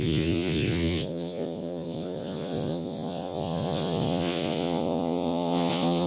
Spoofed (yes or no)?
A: yes